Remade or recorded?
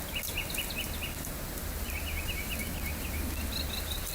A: recorded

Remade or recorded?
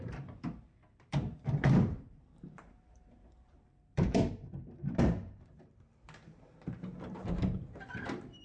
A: remade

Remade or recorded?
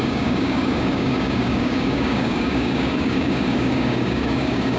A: remade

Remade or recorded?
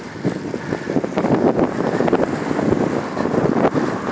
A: recorded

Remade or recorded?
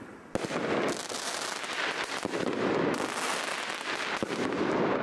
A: recorded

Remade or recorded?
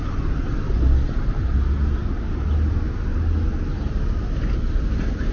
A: recorded